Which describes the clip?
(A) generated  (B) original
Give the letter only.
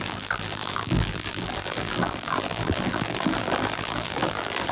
A